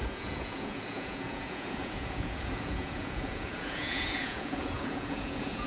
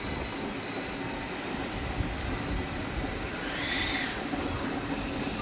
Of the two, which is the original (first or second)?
second